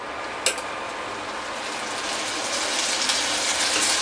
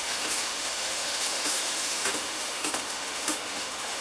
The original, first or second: first